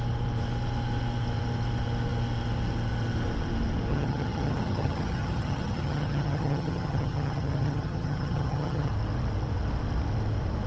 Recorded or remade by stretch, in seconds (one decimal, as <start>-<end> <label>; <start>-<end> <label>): 0.0-3.9 recorded; 3.9-8.9 remade; 8.9-10.7 recorded